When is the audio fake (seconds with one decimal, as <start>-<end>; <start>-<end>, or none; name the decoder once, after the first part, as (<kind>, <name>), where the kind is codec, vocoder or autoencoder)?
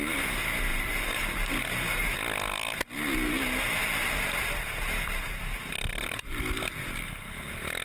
0.7-1.5 (vocoder, BigVGAN v2); 5.9-6.4